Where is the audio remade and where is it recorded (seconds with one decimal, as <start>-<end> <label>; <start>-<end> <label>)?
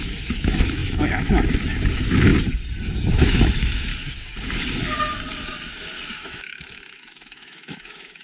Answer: 0.0-2.3 remade; 2.3-3.1 recorded; 3.1-3.9 remade; 3.9-6.1 recorded; 6.1-8.2 remade